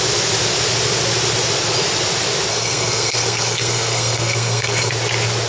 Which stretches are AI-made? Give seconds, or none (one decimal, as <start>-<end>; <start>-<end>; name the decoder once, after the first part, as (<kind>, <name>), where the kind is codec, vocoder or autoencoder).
2.5-4.9 (codec, SNAC)